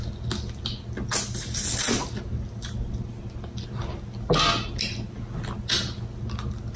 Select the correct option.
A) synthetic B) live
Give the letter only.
B